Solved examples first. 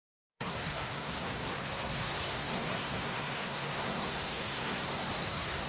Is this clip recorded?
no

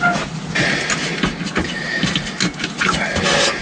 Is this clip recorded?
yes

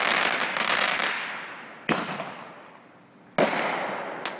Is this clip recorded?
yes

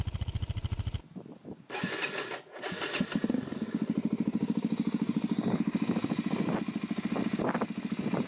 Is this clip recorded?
yes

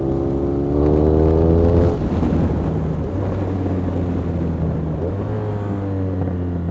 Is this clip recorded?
yes